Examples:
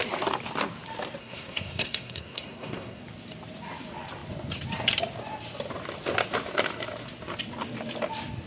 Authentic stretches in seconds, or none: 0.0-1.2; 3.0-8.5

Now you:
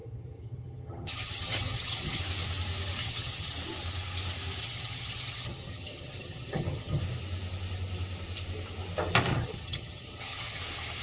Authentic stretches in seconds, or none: 2.2-3.0; 3.5-4.6; 7.0-9.3; 10.6-11.0

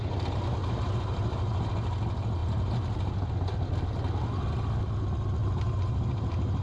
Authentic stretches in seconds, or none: 0.0-0.6; 1.7-2.4; 3.1-5.4

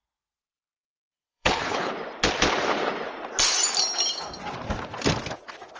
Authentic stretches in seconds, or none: 0.0-1.1; 1.9-5.8

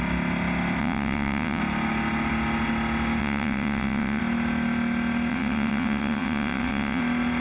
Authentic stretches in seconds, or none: 0.0-0.8; 1.6-3.2; 4.2-5.3; 7.0-7.4

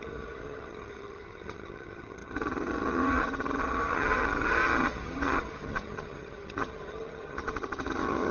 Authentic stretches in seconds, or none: none